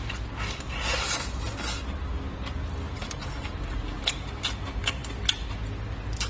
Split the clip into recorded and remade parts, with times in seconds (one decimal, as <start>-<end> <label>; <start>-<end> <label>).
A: 0.0-6.3 recorded